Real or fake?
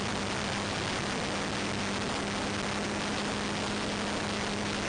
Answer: real